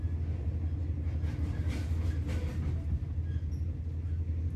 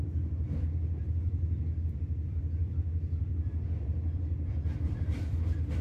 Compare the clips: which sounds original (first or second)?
first